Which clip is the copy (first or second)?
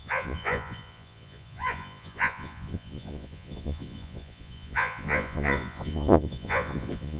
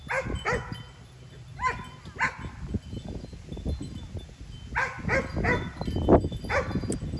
first